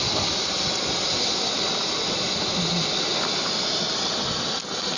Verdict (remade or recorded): recorded